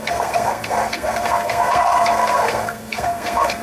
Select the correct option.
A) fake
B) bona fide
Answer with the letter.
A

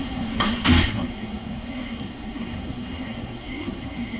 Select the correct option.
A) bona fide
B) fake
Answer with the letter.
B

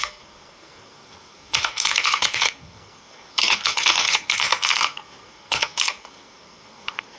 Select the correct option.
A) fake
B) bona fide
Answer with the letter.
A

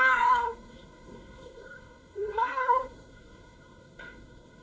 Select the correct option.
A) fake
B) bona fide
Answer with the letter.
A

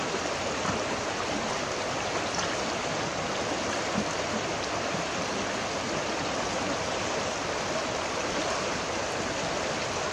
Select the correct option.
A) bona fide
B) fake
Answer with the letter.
A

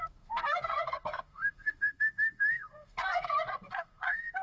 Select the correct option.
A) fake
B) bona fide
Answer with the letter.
A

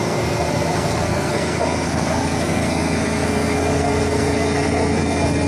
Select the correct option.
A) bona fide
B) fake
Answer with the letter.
B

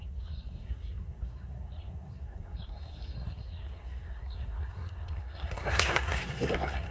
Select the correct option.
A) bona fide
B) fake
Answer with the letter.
B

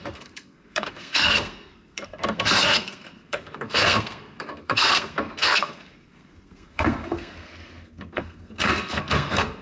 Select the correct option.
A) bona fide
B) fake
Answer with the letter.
B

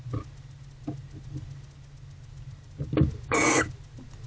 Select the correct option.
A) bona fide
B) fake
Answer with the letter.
A